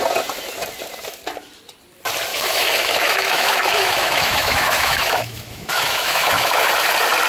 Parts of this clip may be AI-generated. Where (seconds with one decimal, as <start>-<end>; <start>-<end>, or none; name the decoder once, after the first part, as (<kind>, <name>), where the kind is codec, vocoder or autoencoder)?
2.3-6.7 (autoencoder, DAC-VAE)

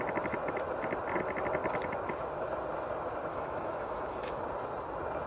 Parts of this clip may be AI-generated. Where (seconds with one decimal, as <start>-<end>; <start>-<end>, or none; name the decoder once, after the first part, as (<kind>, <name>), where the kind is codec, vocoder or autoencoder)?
3.3-4.4 (autoencoder, DAC-VAE)

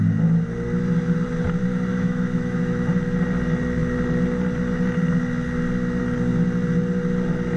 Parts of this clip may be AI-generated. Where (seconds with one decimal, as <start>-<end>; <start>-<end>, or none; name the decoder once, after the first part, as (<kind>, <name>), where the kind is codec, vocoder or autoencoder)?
1.9-2.9 (autoencoder, DAC-VAE)

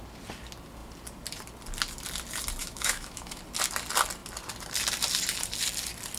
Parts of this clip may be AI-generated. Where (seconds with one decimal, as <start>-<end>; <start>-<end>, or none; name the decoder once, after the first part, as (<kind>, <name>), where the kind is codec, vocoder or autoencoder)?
2.6-3.4 (autoencoder, DAC-VAE)

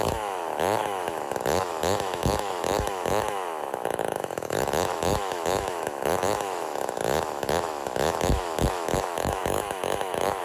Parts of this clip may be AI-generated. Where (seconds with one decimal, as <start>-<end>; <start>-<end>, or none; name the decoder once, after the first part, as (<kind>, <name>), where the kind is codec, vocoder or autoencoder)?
0.0-10.4 (autoencoder, DAC-VAE)